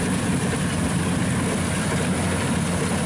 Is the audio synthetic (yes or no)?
no